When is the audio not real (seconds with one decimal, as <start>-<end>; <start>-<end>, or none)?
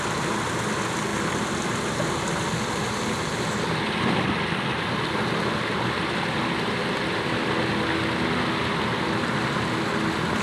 none